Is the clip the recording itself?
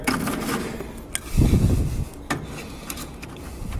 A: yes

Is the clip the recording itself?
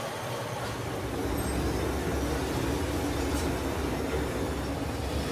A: yes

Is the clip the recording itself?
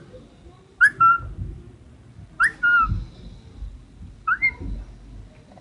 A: yes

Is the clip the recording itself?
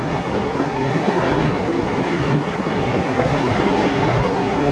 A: no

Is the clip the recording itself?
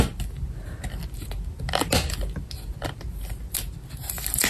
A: yes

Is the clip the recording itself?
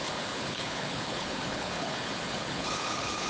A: no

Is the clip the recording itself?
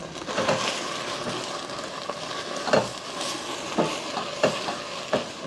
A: yes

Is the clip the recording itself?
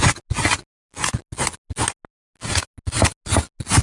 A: yes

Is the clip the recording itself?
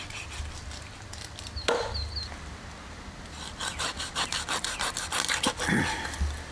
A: yes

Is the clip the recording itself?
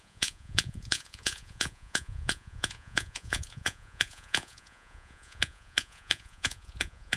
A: no